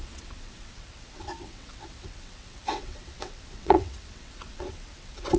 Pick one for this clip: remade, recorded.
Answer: remade